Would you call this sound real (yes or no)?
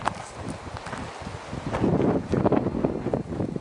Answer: yes